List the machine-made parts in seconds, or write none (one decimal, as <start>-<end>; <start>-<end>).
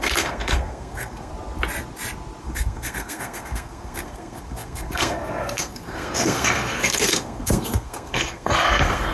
0.0-1.3; 2.4-9.1